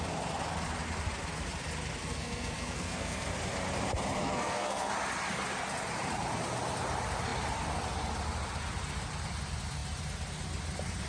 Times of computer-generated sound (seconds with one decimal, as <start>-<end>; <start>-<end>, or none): 2.0-3.3; 4.2-4.9